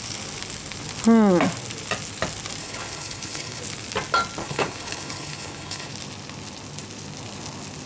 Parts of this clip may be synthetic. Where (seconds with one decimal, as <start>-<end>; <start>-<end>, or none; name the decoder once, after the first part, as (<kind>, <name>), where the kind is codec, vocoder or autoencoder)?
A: 2.6-3.6 (codec, HILCodec); 4.4-5.9